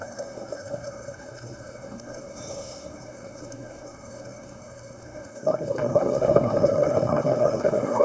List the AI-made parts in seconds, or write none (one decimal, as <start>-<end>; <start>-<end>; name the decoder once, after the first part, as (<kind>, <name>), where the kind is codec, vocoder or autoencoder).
0.0-8.0 (codec, SNAC)